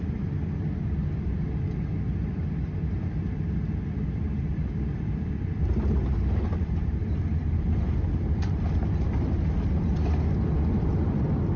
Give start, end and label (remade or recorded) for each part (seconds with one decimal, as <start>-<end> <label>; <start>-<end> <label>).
0.0-1.0 remade; 1.0-2.1 recorded; 2.1-11.6 remade